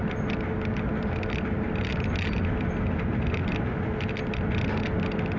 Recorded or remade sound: recorded